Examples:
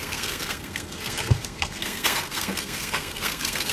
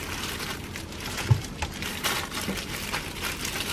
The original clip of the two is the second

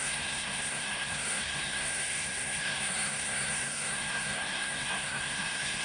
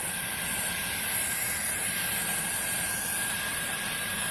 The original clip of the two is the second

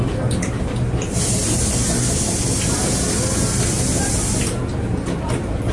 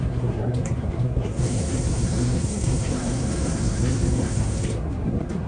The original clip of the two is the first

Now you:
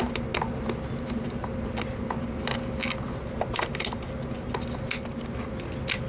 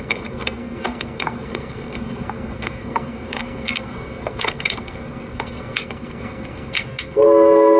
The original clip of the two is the first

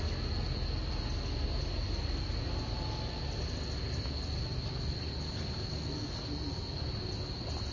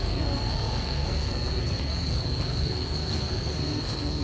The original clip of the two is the first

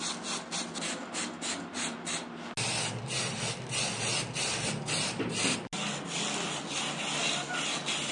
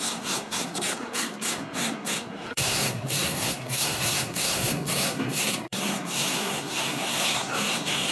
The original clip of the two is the first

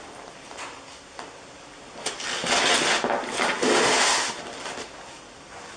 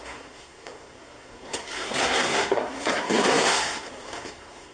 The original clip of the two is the first